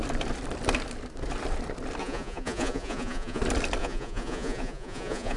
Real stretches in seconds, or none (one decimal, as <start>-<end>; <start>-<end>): 0.0-2.0; 3.4-3.8